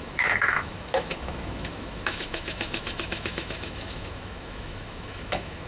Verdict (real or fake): fake